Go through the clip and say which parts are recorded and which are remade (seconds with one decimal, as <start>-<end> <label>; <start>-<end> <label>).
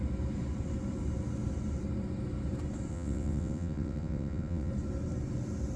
0.0-2.9 recorded; 2.9-4.7 remade; 4.7-5.8 recorded